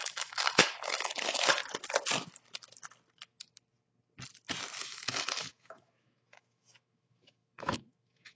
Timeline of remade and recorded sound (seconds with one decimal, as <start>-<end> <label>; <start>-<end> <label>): 0.0-1.6 remade; 1.6-4.8 recorded; 4.8-8.3 remade